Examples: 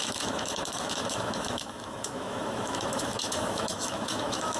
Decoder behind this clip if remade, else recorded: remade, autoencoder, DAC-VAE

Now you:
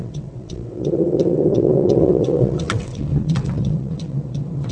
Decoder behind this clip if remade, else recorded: remade, vocoder, WaveNeXt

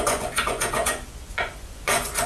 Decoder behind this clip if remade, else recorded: remade, vocoder, Vocos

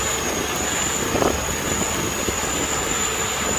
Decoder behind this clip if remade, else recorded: recorded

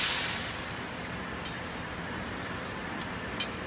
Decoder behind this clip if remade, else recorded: recorded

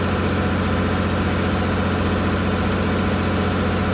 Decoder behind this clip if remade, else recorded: recorded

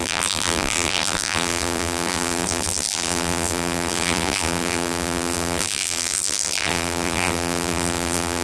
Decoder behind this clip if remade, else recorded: remade, vocoder, BigVGAN v2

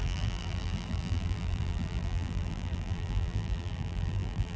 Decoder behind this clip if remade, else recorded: remade, vocoder, BigVGAN v2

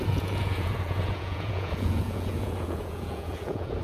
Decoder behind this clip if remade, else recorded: remade, vocoder, Vocos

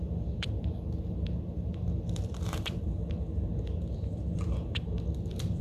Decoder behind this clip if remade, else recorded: remade, vocoder, BigVGAN v2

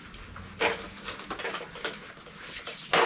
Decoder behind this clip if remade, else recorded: recorded